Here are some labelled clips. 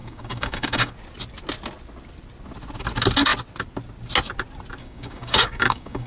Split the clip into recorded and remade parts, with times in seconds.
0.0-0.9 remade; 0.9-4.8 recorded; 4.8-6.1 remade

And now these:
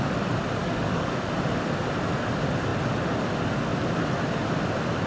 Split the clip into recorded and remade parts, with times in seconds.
0.0-0.6 recorded; 0.6-1.3 remade; 1.3-5.1 recorded

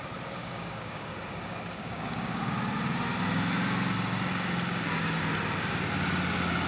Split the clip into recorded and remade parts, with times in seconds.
0.0-0.4 recorded; 0.4-2.5 remade; 2.5-4.3 recorded; 4.3-5.2 remade; 5.2-6.7 recorded